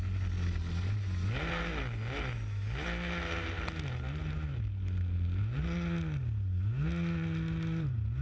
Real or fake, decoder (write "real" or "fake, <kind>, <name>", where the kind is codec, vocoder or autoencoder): real